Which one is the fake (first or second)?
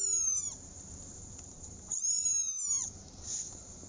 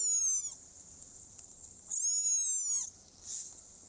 first